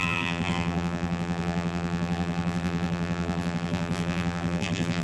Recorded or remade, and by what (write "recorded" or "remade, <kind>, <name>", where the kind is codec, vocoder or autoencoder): remade, vocoder, BigVGAN v2